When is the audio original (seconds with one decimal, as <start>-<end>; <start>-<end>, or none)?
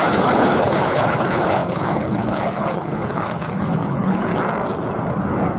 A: 4.3-5.6